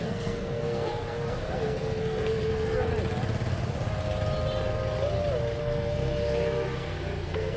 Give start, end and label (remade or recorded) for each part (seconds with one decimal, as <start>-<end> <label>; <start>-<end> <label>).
0.0-2.9 remade; 2.9-5.6 recorded; 5.6-7.6 remade